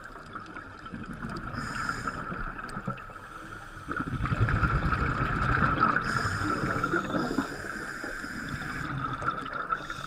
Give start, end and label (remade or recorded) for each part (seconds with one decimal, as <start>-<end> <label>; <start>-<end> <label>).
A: 0.0-6.3 recorded; 6.3-7.8 remade; 7.8-10.1 recorded